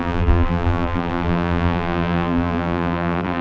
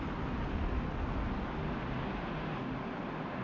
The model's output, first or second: first